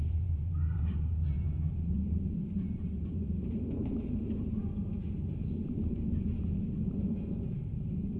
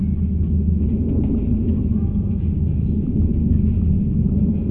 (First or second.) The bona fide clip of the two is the second